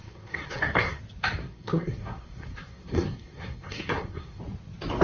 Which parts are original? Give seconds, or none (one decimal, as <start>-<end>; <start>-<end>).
1.0-1.4; 4.4-5.0